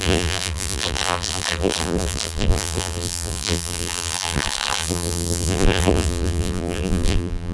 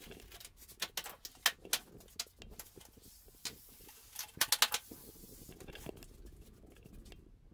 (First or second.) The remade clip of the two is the first